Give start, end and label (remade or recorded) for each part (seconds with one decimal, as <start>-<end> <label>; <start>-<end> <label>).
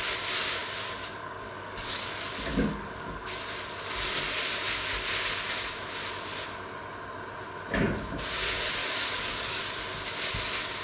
0.0-0.6 recorded; 0.6-2.1 remade; 2.1-2.5 recorded; 2.5-3.4 remade; 3.4-8.8 recorded; 8.8-9.6 remade; 9.6-10.8 recorded